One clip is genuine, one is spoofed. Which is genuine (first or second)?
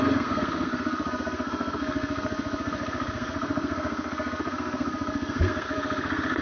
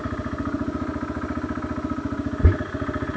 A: second